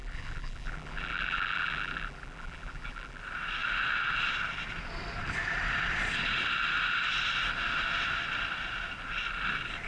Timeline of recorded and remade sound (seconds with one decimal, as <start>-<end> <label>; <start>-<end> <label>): 0.0-3.2 remade; 3.2-9.9 recorded